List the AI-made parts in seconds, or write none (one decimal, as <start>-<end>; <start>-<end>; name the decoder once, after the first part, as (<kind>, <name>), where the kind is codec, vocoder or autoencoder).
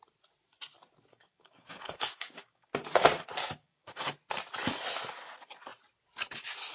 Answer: 1.1-2.7 (codec, DAC); 3.6-4.1